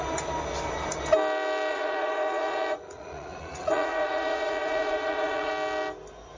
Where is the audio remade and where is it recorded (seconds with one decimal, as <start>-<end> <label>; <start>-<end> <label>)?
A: 0.0-1.7 recorded; 1.7-5.5 remade; 5.5-6.4 recorded